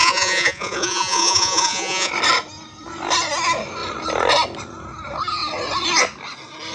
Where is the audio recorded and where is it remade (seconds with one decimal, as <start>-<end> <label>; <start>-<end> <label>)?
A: 0.0-2.1 remade; 2.1-6.7 recorded